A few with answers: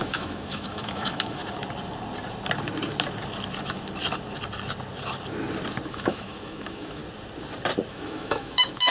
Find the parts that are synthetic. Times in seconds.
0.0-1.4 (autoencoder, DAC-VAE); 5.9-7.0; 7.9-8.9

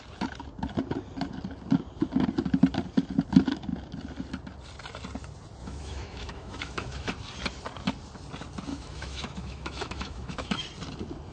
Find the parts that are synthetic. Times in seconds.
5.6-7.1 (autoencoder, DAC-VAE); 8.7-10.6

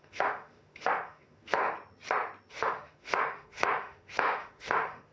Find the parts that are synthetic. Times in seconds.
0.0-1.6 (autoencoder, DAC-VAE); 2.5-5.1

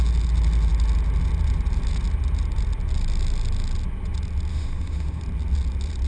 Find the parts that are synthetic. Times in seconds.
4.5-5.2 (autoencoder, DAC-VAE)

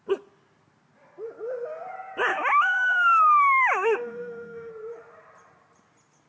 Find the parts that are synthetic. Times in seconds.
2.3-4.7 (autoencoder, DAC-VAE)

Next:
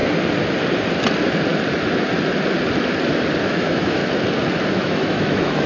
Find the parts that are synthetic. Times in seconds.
3.4-4.0 (autoencoder, DAC-VAE); 4.7-5.7

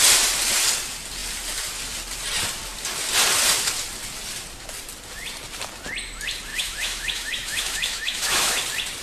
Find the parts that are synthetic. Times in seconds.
6.5-8.6 (autoencoder, DAC-VAE)